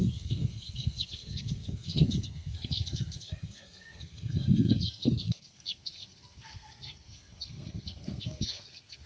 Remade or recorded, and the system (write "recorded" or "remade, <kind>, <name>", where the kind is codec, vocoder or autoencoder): remade, codec, SNAC